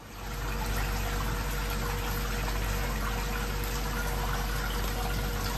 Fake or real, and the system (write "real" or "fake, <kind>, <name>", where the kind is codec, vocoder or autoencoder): real